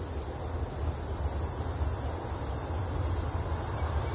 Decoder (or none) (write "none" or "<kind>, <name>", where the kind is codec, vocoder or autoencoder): none